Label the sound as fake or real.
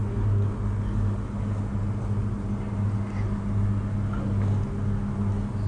real